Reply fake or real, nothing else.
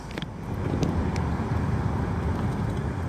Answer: real